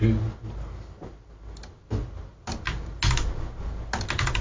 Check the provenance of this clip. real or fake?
real